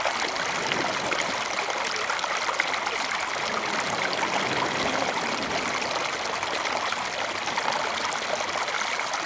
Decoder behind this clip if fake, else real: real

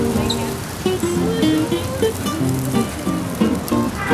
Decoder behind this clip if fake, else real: real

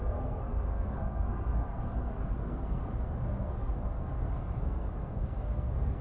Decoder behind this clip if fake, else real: fake, codec, SNAC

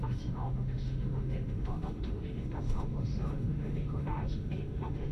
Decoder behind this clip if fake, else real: fake, autoencoder, DAC-VAE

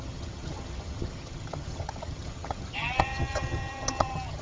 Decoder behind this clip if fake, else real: fake, vocoder, HiFi-GAN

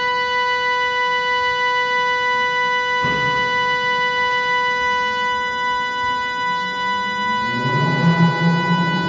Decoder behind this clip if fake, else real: real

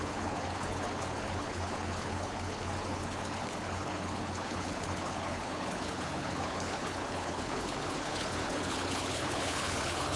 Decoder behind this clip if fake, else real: fake, codec, HILCodec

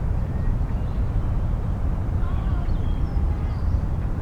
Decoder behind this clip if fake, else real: fake, vocoder, BigVGAN v2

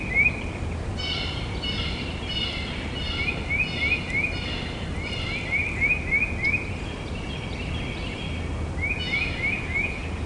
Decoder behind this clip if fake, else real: real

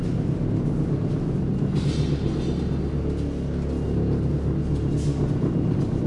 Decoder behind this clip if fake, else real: real